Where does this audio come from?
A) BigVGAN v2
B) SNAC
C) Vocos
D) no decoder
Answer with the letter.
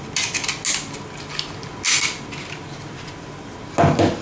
D